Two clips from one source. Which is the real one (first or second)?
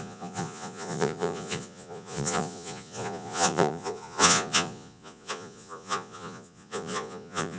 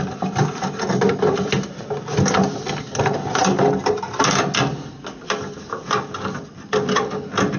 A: second